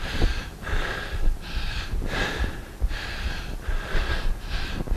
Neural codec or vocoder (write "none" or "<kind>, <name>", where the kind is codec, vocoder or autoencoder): none